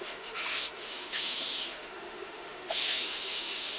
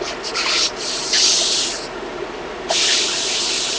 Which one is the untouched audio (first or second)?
second